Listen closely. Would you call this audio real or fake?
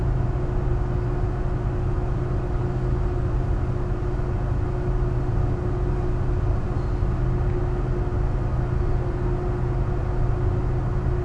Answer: real